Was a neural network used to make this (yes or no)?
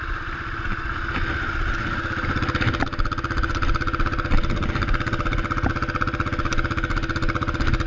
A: no